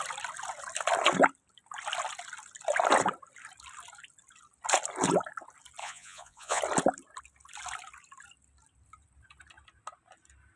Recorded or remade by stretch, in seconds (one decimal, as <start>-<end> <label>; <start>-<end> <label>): 0.0-5.8 recorded; 5.8-6.6 remade; 6.6-10.6 recorded

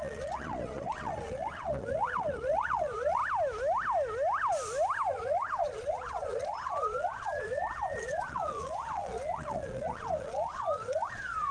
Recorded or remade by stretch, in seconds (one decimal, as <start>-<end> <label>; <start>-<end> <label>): 0.0-3.2 remade; 3.2-5.1 recorded; 5.1-11.5 remade

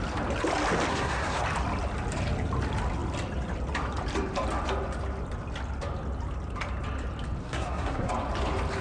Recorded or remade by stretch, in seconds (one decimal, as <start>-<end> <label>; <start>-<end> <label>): 0.0-0.9 recorded; 0.9-1.4 remade; 1.4-7.4 recorded; 7.4-8.1 remade; 8.1-8.8 recorded

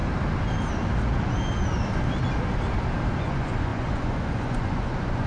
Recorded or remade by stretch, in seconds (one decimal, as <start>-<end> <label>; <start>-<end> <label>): 0.0-3.2 recorded; 3.2-5.3 remade

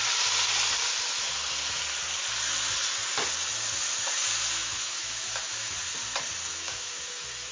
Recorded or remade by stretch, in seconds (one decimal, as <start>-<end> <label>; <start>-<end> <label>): 0.0-4.6 recorded; 4.6-5.7 remade; 5.7-6.5 recorded; 6.5-7.5 remade

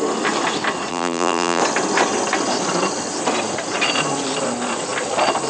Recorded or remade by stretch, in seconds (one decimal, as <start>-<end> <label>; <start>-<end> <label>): 0.0-0.9 recorded; 0.9-1.6 remade; 1.6-5.5 recorded

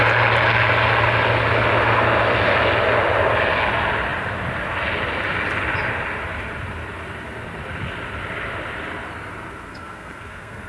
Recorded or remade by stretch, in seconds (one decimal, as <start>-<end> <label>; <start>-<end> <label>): 0.0-9.7 recorded; 9.7-10.7 remade

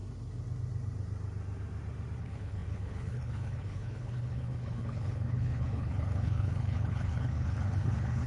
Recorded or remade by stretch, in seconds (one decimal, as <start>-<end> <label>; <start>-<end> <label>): 0.0-2.2 recorded; 2.2-8.3 remade